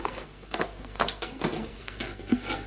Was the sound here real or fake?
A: fake